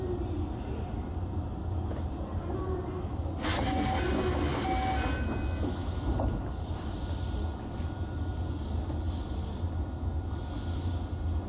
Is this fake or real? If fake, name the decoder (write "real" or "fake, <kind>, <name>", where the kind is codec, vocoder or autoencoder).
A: real